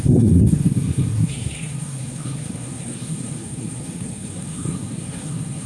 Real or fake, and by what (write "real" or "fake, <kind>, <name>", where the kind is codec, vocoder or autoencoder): fake, codec, SNAC